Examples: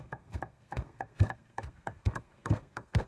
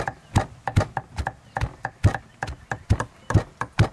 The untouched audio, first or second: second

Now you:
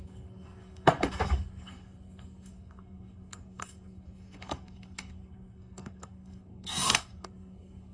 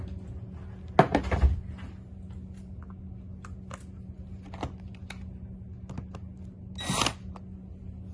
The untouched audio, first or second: second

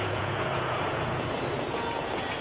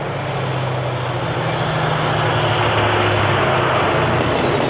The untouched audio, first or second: second